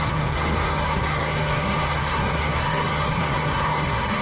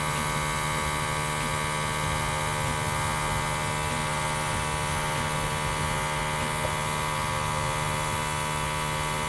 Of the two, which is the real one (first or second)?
second